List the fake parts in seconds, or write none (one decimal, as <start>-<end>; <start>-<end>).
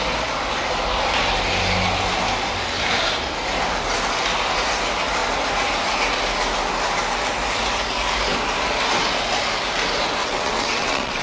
10.2-11.2